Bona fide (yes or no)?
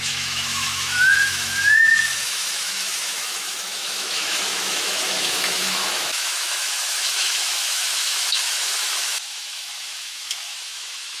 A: no